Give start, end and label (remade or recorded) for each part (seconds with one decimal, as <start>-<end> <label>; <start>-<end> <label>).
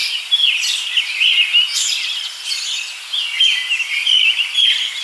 0.0-5.0 recorded